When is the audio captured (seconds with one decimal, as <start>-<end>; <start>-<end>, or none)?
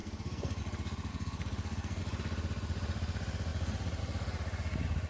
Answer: 0.6-1.1; 2.0-5.1